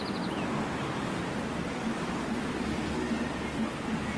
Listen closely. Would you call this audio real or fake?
real